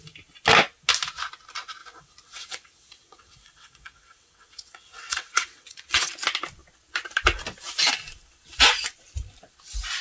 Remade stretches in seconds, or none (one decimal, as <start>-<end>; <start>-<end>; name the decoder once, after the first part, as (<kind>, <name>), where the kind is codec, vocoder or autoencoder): 1.8-6.1 (vocoder, WaveNeXt)